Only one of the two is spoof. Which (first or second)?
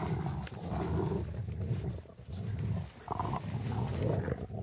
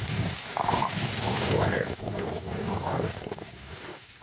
second